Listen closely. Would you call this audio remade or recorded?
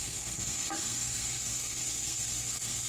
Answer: remade